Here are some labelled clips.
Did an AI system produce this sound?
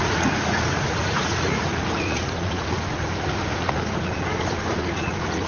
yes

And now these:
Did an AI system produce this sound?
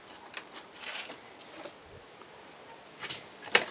no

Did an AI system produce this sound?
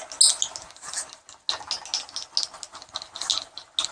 no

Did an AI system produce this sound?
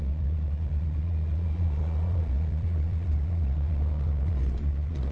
yes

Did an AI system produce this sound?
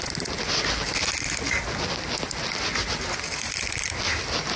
no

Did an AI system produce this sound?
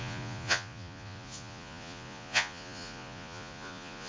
yes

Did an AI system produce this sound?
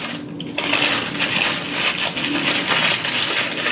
no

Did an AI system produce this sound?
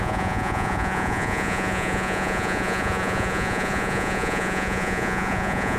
yes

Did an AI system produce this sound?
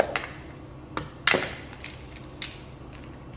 no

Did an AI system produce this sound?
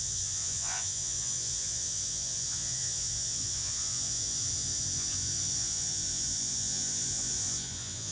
yes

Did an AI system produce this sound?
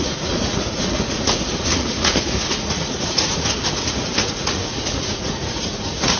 yes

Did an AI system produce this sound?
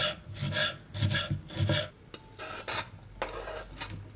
no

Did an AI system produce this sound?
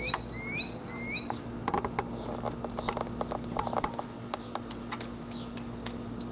no